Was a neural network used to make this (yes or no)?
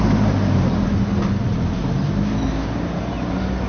no